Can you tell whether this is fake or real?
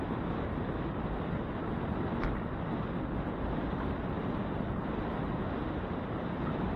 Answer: real